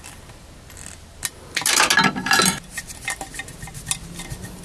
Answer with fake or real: real